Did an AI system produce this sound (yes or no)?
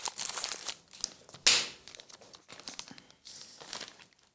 no